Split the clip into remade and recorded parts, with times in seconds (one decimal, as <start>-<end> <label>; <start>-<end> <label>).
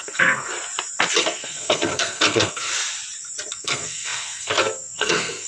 0.0-0.5 remade; 0.5-1.2 recorded; 1.2-2.7 remade; 2.7-3.5 recorded; 3.5-5.5 remade